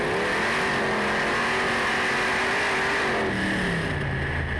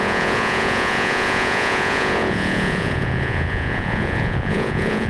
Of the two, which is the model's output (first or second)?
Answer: second